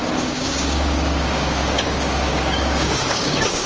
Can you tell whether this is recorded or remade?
remade